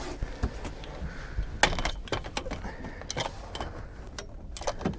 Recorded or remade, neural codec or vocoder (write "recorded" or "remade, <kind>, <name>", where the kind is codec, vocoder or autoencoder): recorded